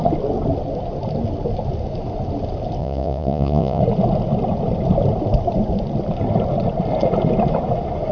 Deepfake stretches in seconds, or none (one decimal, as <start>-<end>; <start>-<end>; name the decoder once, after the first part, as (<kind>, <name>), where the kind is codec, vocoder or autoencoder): 2.8-3.8 (vocoder, Vocos)